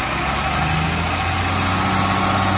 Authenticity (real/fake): real